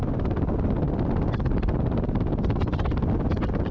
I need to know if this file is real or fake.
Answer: fake